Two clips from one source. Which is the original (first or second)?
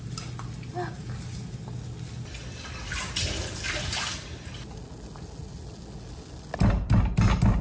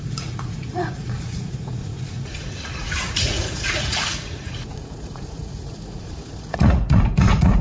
first